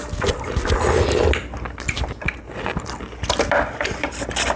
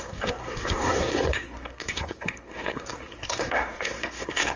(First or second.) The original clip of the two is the first